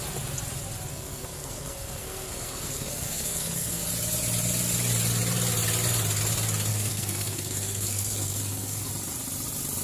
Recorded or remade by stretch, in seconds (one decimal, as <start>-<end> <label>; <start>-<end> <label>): 0.0-0.9 recorded; 0.9-3.8 remade; 3.8-6.7 recorded; 6.7-8.9 remade; 8.9-9.8 recorded